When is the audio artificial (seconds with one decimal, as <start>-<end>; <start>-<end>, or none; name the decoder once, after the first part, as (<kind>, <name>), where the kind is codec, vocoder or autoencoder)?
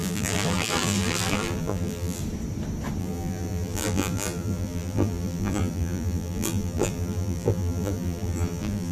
0.0-2.2 (vocoder, BigVGAN v2); 3.0-8.9